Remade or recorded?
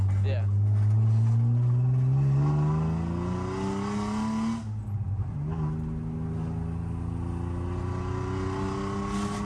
recorded